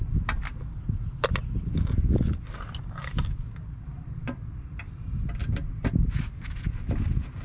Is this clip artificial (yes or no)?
no